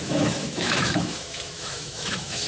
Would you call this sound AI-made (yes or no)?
yes